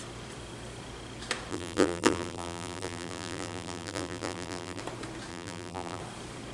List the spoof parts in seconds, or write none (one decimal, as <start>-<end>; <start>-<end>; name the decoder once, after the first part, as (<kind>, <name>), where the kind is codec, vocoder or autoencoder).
1.5-4.8 (vocoder, BigVGAN v2); 5.3-6.0